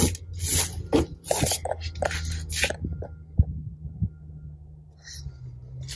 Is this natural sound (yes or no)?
yes